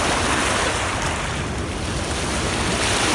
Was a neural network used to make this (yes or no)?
no